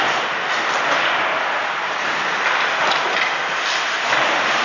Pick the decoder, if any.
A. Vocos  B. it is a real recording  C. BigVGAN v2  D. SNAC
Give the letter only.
B